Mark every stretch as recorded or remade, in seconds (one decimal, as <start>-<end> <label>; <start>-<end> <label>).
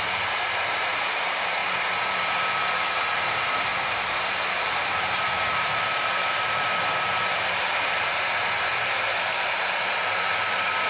0.0-1.6 remade; 1.6-3.3 recorded; 3.3-3.7 remade; 3.7-4.6 recorded; 4.6-10.9 remade